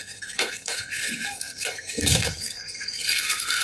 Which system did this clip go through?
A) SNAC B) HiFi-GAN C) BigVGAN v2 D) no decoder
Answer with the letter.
A